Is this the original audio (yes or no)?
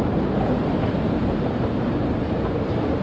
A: yes